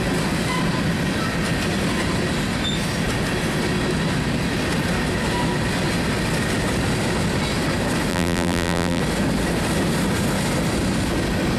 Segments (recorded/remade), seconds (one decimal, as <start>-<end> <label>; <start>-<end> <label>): 0.0-8.1 recorded; 8.1-9.0 remade; 9.0-11.6 recorded